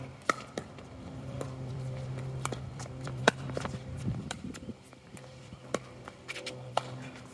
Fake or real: fake